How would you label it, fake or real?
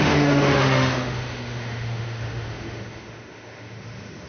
fake